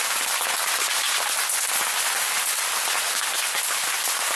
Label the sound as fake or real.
real